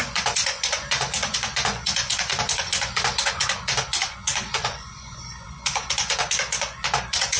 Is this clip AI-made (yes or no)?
yes